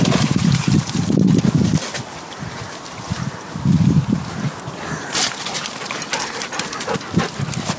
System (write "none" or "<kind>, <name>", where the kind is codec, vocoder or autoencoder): none